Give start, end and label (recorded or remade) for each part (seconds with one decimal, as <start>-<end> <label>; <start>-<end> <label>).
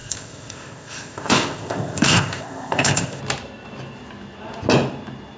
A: 0.0-3.2 remade; 3.2-5.4 recorded